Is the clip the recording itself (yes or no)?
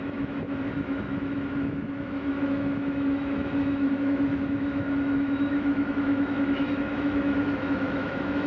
no